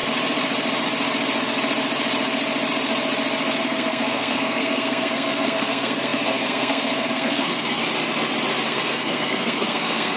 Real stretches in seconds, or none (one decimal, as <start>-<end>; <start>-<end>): 0.0-3.6; 7.8-8.7